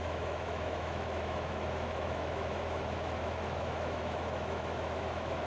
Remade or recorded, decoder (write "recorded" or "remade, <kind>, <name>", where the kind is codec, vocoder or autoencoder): remade, autoencoder, DAC-VAE